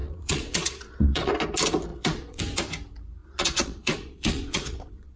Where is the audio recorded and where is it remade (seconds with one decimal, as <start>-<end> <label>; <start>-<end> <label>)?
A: 0.0-1.3 remade; 1.3-1.9 recorded; 1.9-2.4 remade; 2.4-3.2 recorded; 3.2-5.2 remade